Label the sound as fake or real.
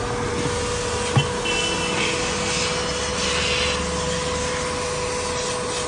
real